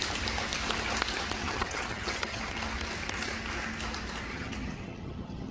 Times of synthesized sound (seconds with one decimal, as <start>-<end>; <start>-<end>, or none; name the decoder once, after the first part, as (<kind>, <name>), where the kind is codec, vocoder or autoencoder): 1.4-2.4 (vocoder, HiFi-GAN); 4.3-5.5